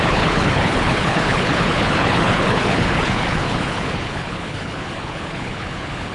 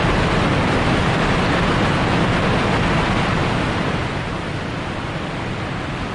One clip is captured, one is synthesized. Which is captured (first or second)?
second